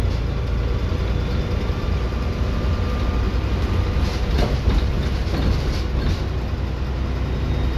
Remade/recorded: recorded